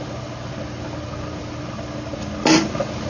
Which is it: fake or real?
real